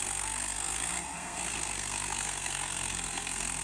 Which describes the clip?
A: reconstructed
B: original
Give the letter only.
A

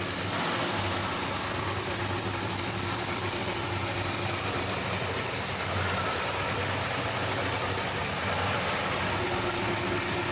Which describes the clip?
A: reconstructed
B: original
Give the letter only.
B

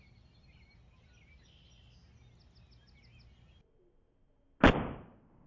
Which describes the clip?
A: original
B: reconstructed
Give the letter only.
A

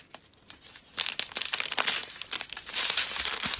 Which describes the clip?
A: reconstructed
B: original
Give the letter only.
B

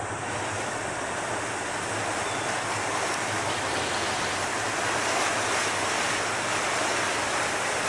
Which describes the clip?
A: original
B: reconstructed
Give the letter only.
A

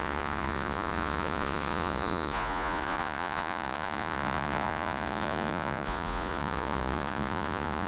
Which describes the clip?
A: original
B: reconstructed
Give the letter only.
B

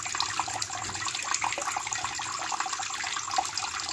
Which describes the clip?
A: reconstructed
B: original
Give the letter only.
B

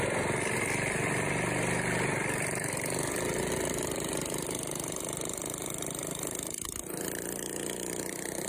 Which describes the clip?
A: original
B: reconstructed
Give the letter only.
A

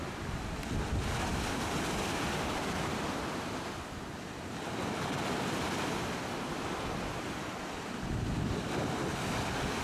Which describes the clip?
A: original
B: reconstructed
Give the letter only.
A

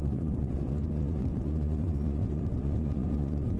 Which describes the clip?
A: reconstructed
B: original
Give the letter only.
A